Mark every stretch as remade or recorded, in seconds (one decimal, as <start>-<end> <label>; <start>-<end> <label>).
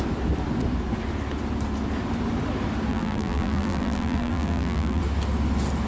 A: 0.0-2.9 recorded; 2.9-5.0 remade; 5.0-5.9 recorded